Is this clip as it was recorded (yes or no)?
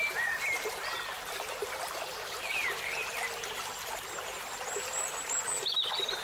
yes